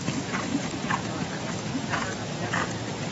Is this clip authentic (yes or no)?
yes